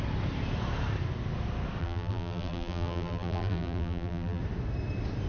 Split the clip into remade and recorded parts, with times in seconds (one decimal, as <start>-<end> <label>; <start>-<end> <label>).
0.0-1.8 recorded; 1.8-4.4 remade; 4.4-5.3 recorded

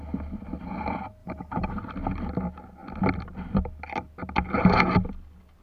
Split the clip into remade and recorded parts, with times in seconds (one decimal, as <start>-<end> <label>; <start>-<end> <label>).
0.0-1.2 recorded; 1.2-1.8 remade; 1.8-5.6 recorded